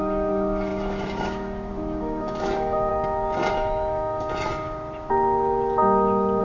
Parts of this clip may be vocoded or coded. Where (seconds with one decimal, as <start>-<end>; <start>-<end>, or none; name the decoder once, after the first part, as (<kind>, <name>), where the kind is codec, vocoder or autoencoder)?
0.0-2.9 (autoencoder, DAC-VAE); 3.5-4.5